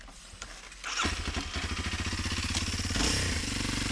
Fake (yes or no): no